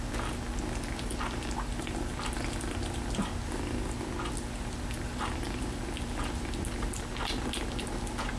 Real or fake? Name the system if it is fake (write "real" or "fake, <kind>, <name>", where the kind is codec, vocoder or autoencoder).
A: real